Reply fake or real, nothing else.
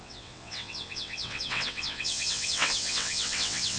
fake